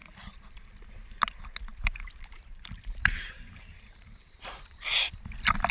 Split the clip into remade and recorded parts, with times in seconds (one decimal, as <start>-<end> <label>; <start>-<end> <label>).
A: 0.0-1.7 recorded; 1.7-4.6 remade; 4.6-5.7 recorded